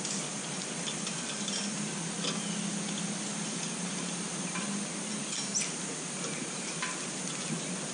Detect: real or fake real